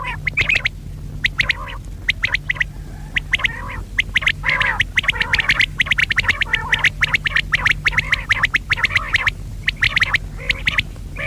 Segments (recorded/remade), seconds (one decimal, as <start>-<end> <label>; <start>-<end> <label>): 0.0-11.3 recorded

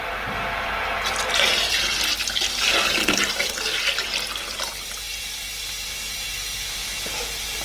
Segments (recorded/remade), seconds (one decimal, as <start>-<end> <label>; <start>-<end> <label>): 0.0-7.6 recorded

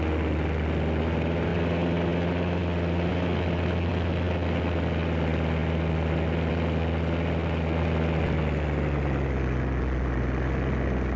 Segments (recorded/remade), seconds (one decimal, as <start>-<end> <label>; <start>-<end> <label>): 0.0-11.2 recorded

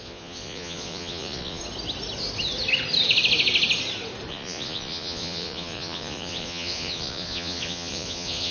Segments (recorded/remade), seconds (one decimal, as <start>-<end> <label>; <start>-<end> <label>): 0.0-1.6 remade; 1.6-4.3 recorded; 4.3-8.5 remade